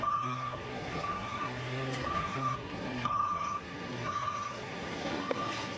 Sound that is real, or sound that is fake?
fake